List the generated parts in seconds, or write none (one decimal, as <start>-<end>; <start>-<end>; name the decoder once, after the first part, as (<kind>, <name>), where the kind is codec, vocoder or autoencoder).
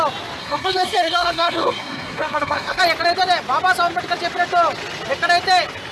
0.4-2.8 (codec, SNAC)